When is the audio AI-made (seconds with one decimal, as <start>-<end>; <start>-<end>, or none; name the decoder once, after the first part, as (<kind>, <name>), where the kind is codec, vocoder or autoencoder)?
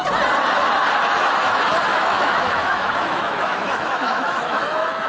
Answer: 1.9-5.1 (autoencoder, DAC-VAE)